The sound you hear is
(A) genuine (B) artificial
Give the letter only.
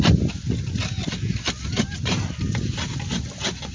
A